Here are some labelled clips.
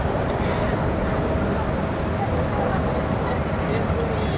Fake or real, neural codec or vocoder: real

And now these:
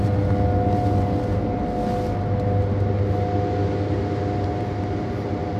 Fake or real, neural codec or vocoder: real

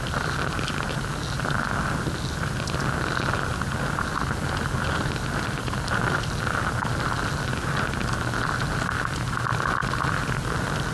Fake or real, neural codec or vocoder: real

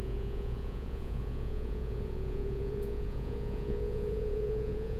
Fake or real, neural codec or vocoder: fake, vocoder, Vocos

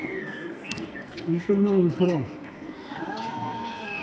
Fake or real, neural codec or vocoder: fake, codec, SNAC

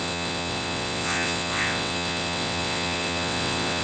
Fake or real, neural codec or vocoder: fake, vocoder, WaveNeXt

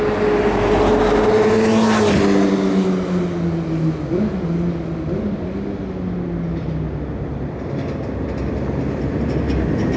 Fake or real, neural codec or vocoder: real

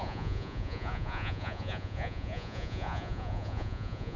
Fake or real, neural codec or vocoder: fake, vocoder, Vocos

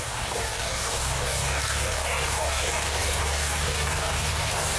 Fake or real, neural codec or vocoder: fake, codec, DAC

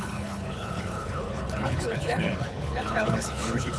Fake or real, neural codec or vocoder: fake, codec, HILCodec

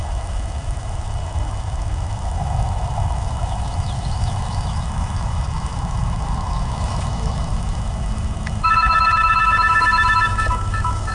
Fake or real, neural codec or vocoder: fake, autoencoder, DAC-VAE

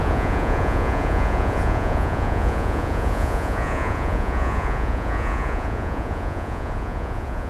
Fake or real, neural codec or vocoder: fake, vocoder, Vocos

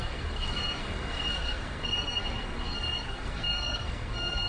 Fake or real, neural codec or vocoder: fake, codec, SNAC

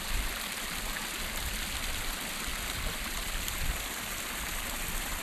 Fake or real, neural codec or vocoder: real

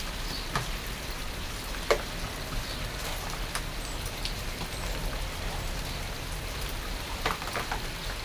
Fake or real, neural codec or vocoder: real